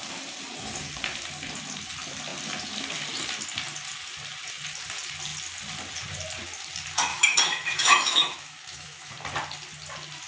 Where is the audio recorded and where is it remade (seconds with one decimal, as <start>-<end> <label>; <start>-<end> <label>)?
0.0-7.1 recorded; 7.1-9.1 remade; 9.1-10.3 recorded